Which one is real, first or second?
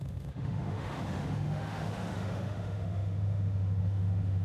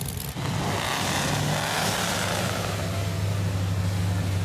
second